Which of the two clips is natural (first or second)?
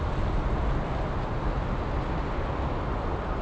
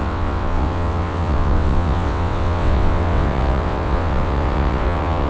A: first